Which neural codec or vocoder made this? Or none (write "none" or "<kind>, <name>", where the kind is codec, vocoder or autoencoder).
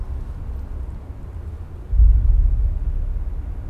none